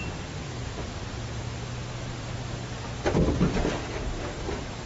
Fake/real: real